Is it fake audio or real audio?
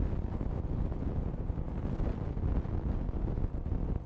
real